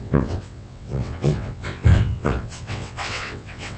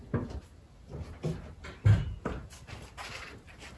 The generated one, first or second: first